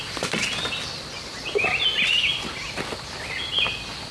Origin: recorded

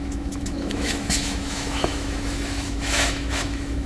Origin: remade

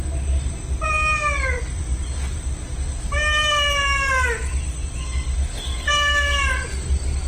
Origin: recorded